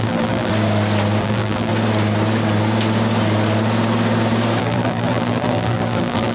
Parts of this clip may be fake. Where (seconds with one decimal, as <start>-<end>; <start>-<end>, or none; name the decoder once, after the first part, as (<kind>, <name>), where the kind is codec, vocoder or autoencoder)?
0.0-0.5 (vocoder, BigVGAN v2); 1.2-1.7; 4.6-6.3